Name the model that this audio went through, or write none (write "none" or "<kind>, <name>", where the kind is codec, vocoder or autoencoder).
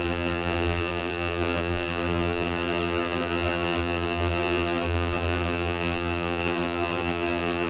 vocoder, BigVGAN v2